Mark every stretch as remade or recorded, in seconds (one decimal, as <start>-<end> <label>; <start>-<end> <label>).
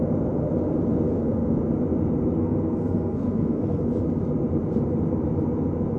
0.0-1.1 recorded; 1.1-1.6 remade; 1.6-2.4 recorded; 2.4-3.8 remade; 3.8-6.0 recorded